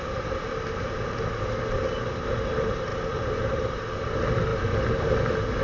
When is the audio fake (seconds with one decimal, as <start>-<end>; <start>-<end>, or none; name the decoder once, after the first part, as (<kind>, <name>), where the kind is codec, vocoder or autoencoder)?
2.9-3.8 (vocoder, BigVGAN v2); 4.5-5.1